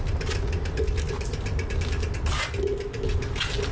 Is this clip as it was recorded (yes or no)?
yes